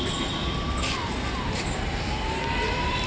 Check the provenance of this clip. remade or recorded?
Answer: remade